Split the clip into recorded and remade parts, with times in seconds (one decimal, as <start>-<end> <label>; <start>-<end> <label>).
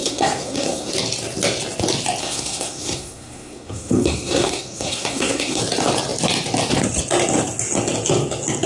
0.0-0.9 remade; 0.9-2.2 recorded; 2.2-5.6 remade; 5.6-8.7 recorded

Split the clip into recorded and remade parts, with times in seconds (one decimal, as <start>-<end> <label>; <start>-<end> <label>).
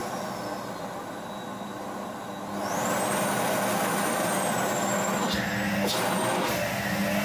0.0-7.2 recorded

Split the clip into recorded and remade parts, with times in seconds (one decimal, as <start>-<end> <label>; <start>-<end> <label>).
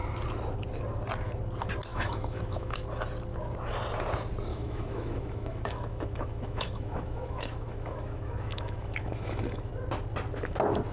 0.0-1.9 recorded; 1.9-2.8 remade; 2.8-4.5 recorded; 4.5-9.7 remade; 9.7-10.9 recorded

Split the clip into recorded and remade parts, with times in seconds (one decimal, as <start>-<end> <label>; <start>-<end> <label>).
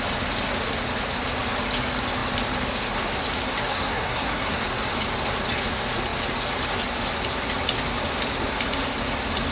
0.0-3.7 recorded; 3.7-4.6 remade; 4.6-9.5 recorded